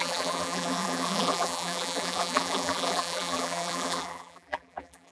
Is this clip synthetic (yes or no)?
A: yes